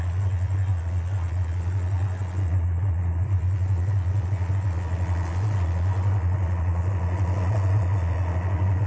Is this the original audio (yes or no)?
no